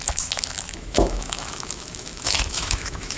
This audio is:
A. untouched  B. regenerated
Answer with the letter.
B